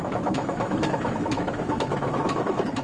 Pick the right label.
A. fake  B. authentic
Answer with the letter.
A